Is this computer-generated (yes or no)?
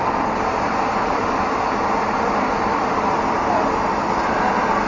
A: no